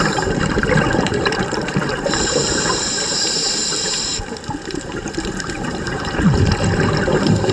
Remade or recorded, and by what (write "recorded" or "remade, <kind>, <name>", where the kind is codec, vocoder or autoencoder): remade, vocoder, BigVGAN v2